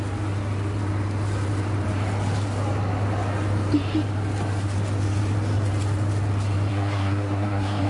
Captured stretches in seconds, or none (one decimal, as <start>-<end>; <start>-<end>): 0.0-6.7